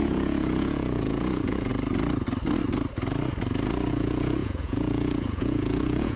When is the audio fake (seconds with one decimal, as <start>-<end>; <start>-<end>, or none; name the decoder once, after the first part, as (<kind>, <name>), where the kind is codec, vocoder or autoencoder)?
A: 0.0-1.7 (vocoder, Vocos); 3.9-6.2